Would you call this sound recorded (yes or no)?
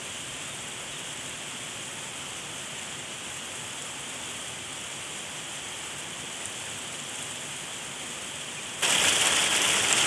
yes